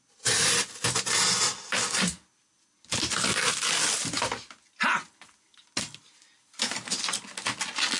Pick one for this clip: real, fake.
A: real